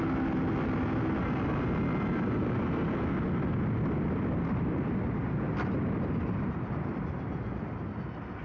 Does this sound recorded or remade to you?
recorded